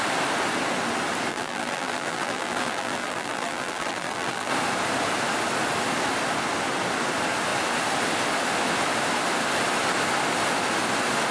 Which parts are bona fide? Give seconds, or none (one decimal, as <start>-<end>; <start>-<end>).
0.0-1.3; 4.5-11.3